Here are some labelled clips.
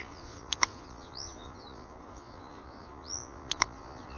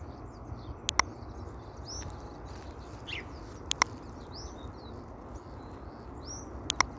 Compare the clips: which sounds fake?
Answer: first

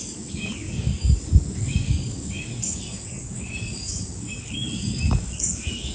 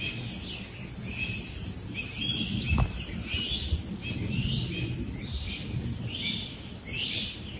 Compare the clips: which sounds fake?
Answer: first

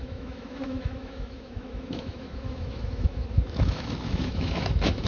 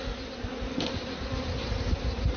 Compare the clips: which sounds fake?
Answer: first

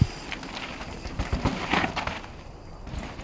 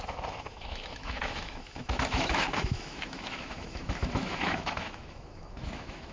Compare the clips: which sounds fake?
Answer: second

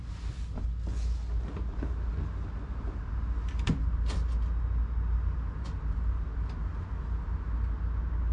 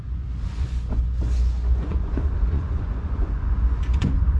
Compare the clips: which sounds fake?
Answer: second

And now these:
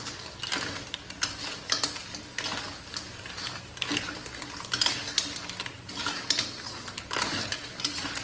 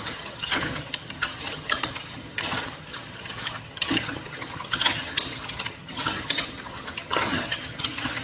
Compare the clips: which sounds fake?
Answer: second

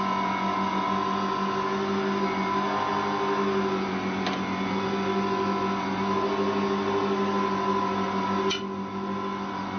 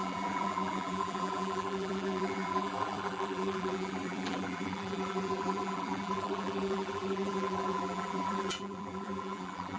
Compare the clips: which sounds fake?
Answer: second